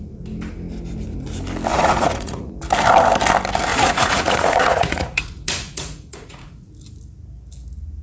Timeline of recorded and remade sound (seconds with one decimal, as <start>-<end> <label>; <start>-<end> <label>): 0.0-1.7 recorded; 1.7-2.5 remade; 2.5-3.7 recorded; 3.7-6.7 remade; 6.7-8.0 recorded